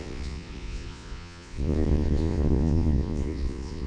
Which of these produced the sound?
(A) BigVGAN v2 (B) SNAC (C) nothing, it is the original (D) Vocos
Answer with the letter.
D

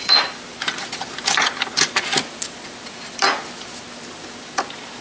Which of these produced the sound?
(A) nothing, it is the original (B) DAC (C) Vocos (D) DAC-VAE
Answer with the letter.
A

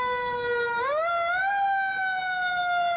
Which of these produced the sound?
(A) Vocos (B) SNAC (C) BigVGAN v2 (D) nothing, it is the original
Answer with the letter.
D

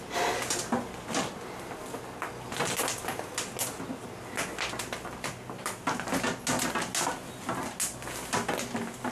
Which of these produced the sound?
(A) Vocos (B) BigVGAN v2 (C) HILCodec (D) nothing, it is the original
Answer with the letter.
D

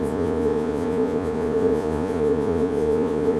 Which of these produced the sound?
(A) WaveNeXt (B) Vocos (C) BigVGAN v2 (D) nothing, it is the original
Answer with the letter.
B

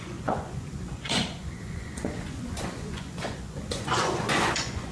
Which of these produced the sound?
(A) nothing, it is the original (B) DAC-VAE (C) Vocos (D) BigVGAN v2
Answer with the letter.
C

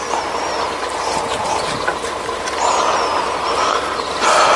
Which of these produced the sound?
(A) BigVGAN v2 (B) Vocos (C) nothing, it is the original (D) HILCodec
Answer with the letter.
C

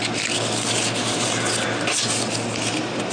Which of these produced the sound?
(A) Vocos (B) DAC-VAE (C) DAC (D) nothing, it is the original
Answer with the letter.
D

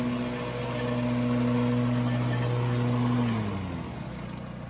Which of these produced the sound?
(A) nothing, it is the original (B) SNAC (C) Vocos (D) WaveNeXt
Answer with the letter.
A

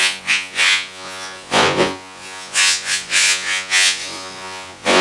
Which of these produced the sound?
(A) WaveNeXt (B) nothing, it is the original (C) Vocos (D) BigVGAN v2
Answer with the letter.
C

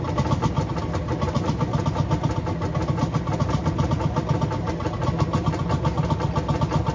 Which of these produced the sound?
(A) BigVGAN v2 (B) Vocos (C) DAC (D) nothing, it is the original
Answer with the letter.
D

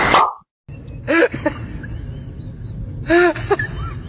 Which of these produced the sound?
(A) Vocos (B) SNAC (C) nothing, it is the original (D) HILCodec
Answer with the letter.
C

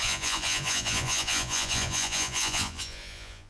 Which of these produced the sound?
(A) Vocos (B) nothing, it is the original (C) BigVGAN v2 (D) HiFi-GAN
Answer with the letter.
A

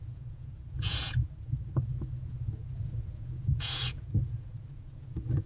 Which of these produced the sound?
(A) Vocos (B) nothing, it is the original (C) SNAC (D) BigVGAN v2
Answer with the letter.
A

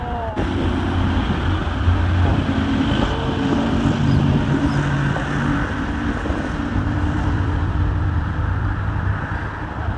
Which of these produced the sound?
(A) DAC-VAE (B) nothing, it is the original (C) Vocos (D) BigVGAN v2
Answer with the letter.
B